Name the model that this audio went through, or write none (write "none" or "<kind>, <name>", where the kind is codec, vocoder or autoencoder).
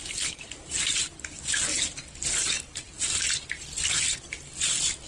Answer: none